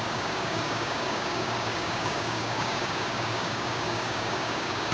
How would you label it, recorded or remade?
remade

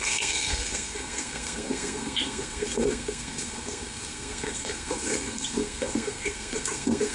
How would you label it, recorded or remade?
remade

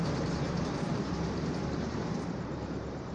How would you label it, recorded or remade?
remade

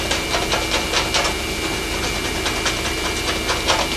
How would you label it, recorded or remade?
recorded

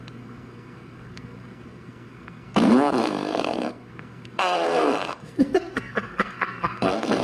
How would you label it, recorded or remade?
remade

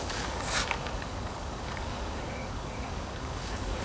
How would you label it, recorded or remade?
remade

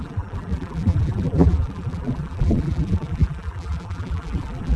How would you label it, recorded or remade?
remade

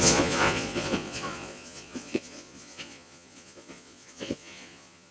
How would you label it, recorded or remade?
remade